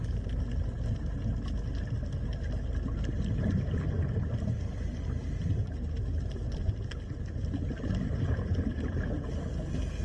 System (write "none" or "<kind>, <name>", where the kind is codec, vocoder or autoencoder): none